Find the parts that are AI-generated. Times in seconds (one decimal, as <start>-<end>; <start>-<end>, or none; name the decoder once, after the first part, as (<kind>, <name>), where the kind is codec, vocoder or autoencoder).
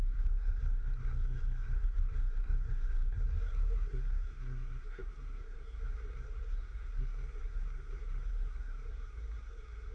0.0-9.9 (codec, SNAC)